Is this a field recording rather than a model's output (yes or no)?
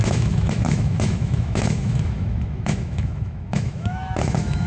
no